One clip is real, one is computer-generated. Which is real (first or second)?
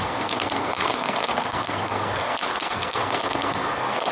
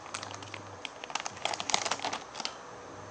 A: second